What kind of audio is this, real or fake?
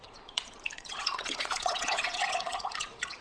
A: fake